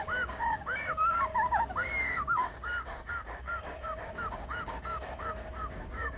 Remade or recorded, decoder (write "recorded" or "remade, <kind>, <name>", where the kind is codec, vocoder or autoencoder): remade, codec, DAC